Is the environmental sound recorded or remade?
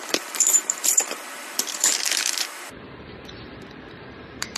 remade